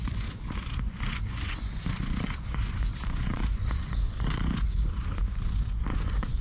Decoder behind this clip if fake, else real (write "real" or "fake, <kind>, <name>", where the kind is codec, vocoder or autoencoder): fake, vocoder, Vocos